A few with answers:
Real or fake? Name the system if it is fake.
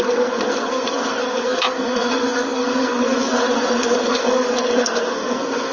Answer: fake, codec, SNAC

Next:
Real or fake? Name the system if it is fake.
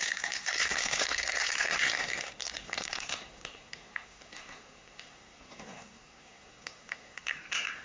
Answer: fake, codec, SNAC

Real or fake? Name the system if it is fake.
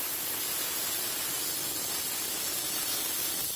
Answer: real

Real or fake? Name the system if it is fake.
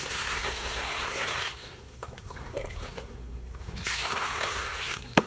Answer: fake, codec, SNAC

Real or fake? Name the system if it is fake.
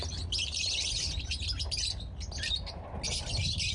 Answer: real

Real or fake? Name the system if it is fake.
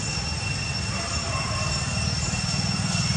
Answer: real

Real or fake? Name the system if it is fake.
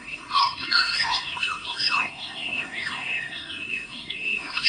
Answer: fake, codec, SNAC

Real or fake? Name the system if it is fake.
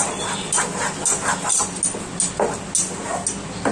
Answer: real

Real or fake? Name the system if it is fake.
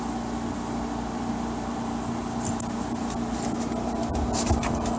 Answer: real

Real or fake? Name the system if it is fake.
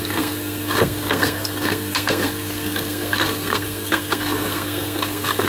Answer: fake, codec, SNAC